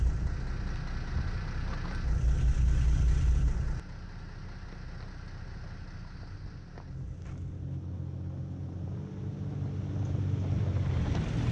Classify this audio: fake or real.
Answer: real